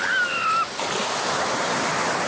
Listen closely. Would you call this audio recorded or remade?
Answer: recorded